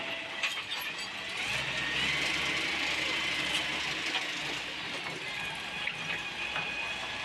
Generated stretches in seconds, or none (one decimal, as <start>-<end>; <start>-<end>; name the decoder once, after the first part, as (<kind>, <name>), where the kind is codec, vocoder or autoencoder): 0.7-1.4 (vocoder, BigVGAN v2)